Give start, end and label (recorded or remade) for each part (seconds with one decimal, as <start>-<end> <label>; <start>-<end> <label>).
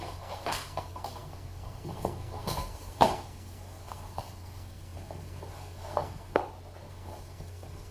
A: 0.0-6.4 remade; 6.4-6.9 recorded; 6.9-7.9 remade